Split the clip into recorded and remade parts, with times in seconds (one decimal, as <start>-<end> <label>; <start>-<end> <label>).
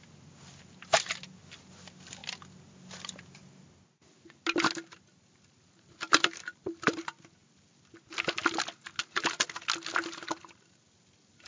0.0-11.5 recorded